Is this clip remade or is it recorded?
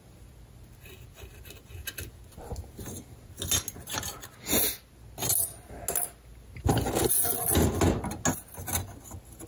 recorded